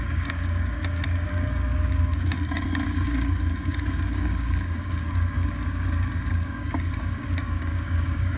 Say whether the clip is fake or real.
fake